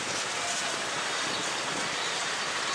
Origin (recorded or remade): recorded